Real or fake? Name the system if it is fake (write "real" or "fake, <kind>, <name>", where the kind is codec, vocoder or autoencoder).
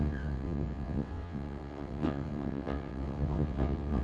fake, vocoder, WaveNeXt